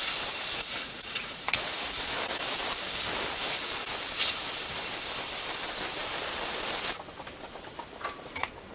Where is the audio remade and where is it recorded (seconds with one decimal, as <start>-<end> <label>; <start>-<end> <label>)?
0.0-0.4 recorded; 0.4-2.0 remade; 2.0-8.7 recorded